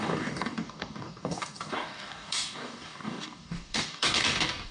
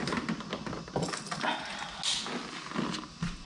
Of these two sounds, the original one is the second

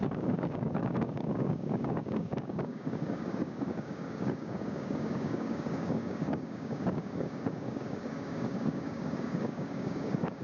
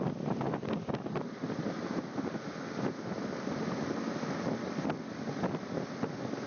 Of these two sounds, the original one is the second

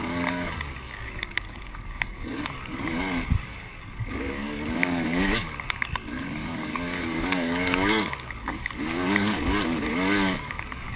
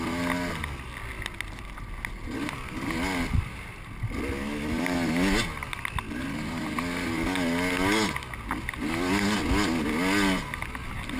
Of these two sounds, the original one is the second